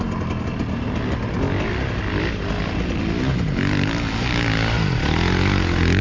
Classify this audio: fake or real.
real